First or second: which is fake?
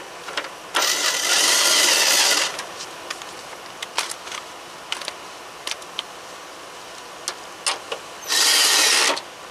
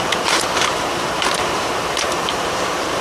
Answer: second